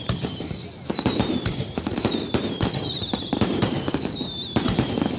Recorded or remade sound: remade